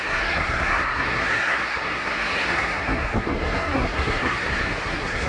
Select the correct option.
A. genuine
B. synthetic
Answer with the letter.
B